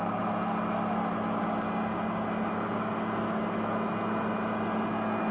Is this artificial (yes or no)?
no